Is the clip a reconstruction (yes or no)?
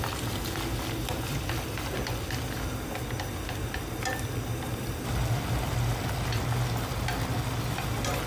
no